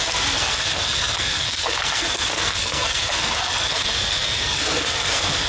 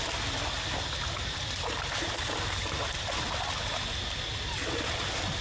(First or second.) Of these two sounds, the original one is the second